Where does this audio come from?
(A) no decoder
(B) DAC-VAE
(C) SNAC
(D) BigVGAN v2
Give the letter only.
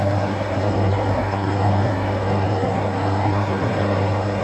C